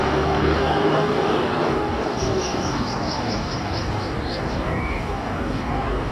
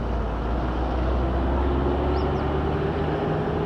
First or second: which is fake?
first